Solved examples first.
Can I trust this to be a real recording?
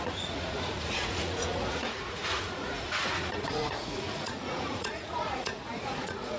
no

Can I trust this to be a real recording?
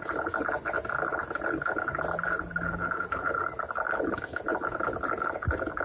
yes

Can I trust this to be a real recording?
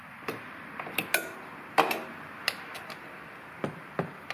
yes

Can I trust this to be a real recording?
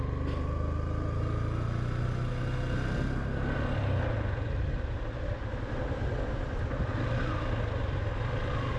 yes